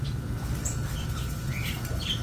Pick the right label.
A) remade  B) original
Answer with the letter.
B